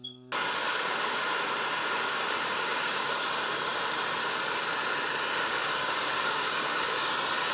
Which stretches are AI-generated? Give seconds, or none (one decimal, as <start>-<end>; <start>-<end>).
0.6-1.3; 1.8-3.3; 5.6-7.1